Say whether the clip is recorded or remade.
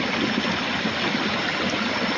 recorded